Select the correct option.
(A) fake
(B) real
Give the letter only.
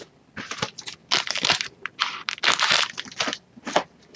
B